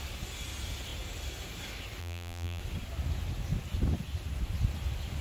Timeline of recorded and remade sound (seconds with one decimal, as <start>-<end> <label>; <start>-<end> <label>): 0.0-2.0 recorded; 2.0-2.6 remade; 2.6-5.2 recorded